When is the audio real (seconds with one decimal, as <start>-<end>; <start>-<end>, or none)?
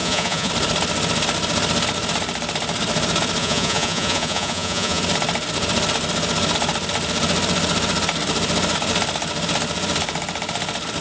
0.5-3.4; 5.0-11.0